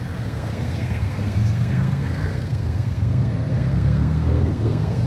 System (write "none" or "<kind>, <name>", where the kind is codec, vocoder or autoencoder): codec, SNAC